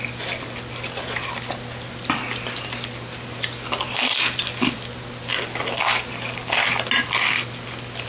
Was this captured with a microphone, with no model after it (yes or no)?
yes